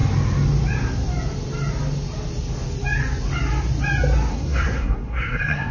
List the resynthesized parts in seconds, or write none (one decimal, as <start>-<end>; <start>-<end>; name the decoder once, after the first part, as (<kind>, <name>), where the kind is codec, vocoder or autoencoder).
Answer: 4.3-5.7 (codec, SNAC)